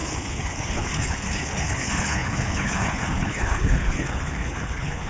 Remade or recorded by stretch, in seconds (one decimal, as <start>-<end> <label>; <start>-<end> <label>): 0.0-5.1 remade